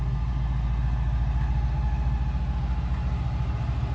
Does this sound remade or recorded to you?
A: recorded